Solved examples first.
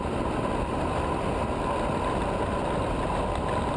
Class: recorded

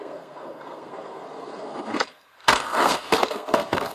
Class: remade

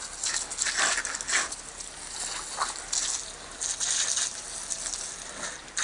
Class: recorded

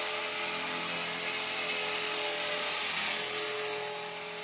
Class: recorded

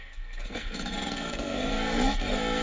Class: remade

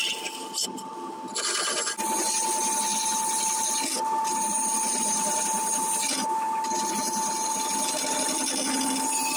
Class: recorded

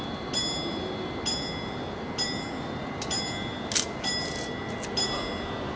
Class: recorded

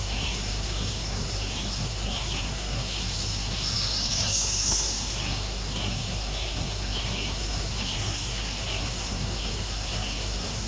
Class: remade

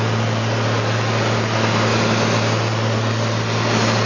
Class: recorded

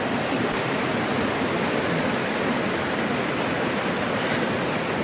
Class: recorded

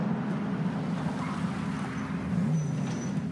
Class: recorded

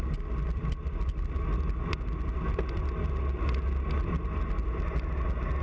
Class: recorded